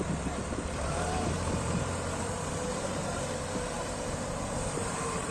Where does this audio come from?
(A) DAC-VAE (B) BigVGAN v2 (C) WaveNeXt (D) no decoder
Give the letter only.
B